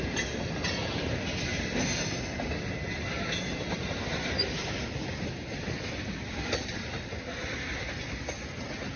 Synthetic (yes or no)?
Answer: no